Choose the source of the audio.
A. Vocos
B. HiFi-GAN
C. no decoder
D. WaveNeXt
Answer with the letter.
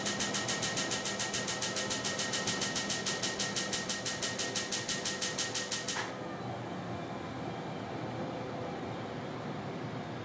C